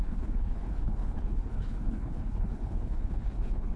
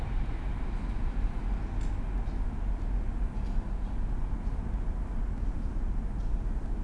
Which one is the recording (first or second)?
second